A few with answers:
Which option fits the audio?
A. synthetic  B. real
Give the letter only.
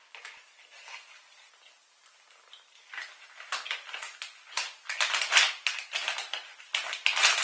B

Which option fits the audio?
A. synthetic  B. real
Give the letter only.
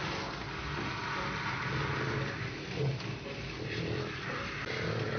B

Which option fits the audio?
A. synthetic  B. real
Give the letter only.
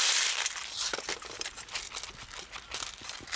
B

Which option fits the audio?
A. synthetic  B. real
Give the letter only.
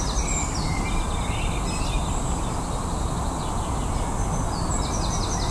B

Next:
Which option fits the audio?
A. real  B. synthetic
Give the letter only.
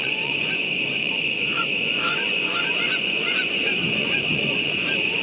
B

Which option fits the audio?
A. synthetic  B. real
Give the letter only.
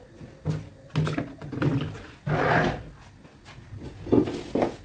B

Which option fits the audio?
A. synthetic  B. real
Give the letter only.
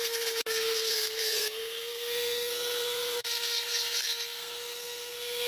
A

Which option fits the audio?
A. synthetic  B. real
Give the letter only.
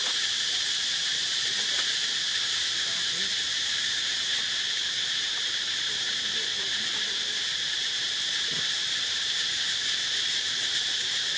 A